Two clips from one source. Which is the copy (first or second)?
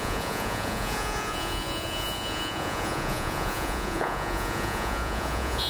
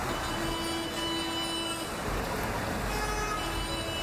first